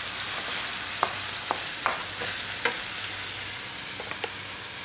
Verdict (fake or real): real